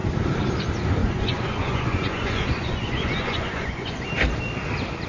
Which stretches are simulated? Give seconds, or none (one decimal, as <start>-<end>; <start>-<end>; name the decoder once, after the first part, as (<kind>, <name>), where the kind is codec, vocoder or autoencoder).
1.0-4.1 (vocoder, Vocos)